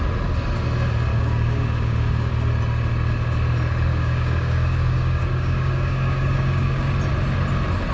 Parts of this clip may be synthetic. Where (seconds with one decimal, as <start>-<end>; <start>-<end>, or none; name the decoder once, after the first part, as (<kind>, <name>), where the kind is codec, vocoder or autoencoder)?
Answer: 1.1-2.3 (codec, DAC); 3.9-6.9